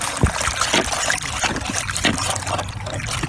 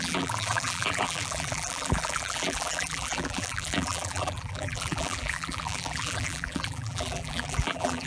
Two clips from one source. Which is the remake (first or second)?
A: second